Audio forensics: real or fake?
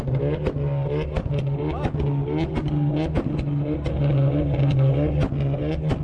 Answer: real